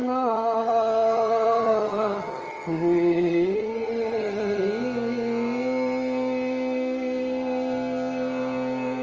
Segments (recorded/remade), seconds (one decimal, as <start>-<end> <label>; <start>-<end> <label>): 0.0-4.6 remade; 4.6-9.0 recorded